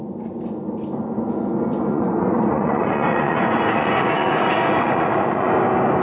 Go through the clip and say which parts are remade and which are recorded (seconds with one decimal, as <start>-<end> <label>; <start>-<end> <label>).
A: 0.0-1.9 recorded; 1.9-5.5 remade; 5.5-6.0 recorded